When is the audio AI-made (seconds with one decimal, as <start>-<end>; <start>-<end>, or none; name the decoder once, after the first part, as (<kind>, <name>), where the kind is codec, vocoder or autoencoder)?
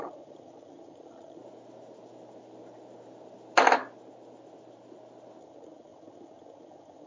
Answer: 0.0-1.4 (vocoder, HiFi-GAN); 5.4-7.1